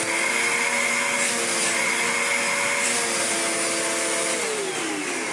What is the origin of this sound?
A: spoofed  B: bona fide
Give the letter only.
B